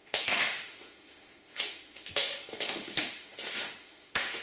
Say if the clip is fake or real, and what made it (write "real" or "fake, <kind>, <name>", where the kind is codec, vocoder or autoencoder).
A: fake, autoencoder, DAC-VAE